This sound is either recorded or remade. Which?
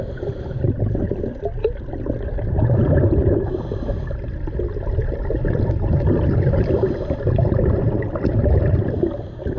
recorded